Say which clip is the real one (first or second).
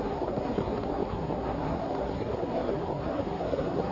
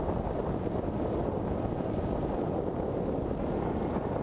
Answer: second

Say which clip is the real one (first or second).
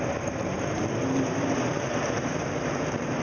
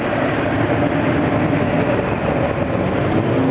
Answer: second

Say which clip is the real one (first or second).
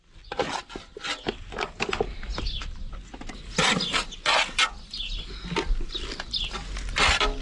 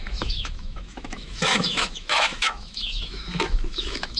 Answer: first